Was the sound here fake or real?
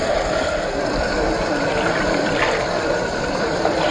fake